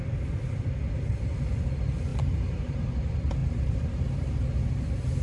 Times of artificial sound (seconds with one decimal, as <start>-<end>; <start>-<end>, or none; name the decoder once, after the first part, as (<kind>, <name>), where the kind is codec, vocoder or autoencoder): 2.1-2.7 (vocoder, BigVGAN v2); 3.4-4.4